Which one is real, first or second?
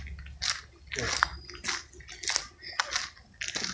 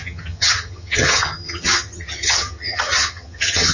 first